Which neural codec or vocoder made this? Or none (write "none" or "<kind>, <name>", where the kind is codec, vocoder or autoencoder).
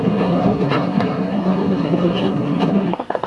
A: codec, SNAC